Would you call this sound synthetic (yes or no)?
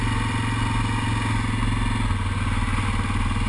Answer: no